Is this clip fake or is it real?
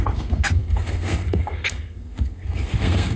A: fake